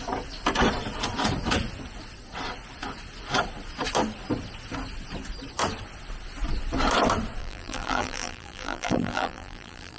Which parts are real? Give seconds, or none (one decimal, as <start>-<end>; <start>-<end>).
0.0-7.4